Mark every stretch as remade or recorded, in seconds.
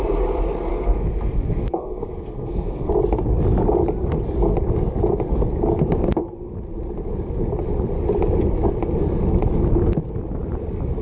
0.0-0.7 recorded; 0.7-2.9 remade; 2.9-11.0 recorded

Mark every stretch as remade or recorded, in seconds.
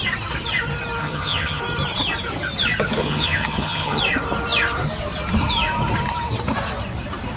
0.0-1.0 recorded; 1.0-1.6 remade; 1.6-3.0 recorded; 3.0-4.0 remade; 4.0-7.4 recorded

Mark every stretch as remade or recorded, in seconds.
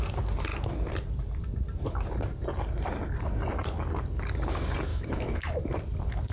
0.0-4.9 recorded; 4.9-5.6 remade; 5.6-6.3 recorded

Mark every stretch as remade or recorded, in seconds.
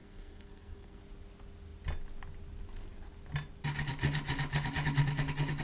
0.0-1.0 remade; 1.0-5.6 recorded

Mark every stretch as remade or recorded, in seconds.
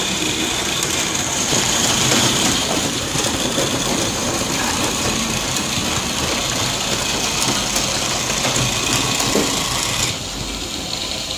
0.0-5.8 remade; 5.8-11.0 recorded; 11.0-11.4 remade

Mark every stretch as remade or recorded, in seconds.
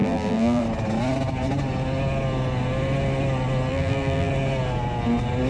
0.0-0.6 remade; 0.6-3.7 recorded; 3.7-4.3 remade; 4.3-5.5 recorded